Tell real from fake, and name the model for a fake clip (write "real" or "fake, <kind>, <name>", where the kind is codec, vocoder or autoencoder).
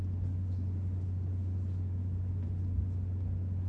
real